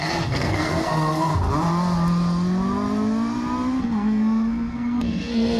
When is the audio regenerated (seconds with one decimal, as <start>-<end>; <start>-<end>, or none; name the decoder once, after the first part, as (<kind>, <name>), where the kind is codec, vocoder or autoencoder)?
0.0-1.3 (codec, SNAC); 3.8-5.6